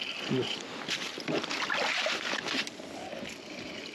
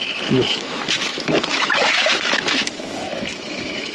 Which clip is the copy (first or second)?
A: second